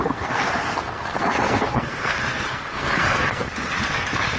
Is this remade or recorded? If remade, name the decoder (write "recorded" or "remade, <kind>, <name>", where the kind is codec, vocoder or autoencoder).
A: remade, codec, SNAC